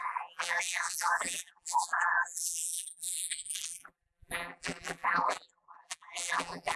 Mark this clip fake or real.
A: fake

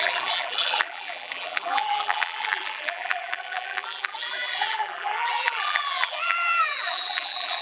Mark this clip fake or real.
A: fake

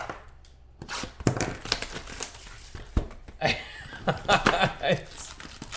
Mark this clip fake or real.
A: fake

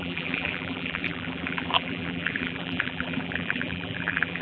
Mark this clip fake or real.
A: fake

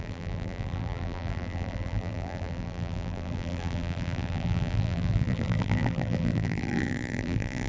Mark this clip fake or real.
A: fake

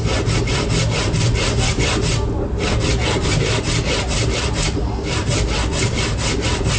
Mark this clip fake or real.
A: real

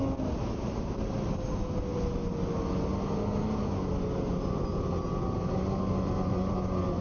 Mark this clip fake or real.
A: real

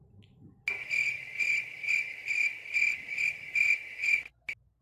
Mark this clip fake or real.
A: real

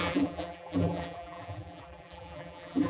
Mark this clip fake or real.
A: fake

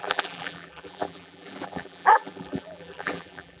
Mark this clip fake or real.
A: fake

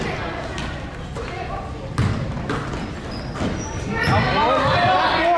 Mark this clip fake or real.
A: real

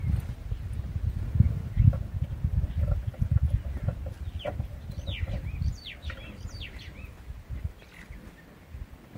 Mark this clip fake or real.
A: real